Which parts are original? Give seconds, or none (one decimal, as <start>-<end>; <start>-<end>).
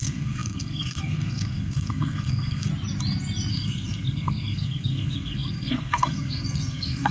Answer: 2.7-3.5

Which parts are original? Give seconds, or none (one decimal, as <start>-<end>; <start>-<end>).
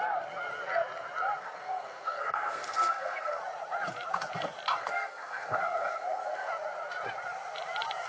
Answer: 0.0-1.4; 3.4-4.8; 6.5-8.1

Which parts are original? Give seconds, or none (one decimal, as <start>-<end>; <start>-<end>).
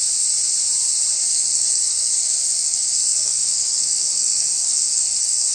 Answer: 0.0-1.3